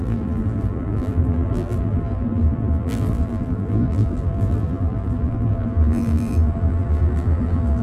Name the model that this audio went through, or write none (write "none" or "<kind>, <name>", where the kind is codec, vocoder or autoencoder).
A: vocoder, BigVGAN v2